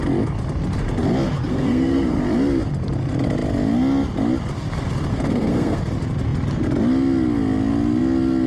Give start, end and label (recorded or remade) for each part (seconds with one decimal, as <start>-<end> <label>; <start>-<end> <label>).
0.0-1.5 recorded; 1.5-2.2 remade; 2.2-5.1 recorded; 5.1-5.8 remade; 5.8-8.5 recorded